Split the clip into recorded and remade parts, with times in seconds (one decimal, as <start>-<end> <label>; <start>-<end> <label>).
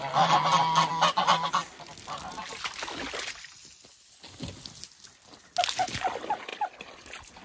0.0-7.4 recorded